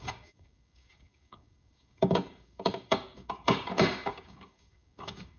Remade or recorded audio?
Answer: remade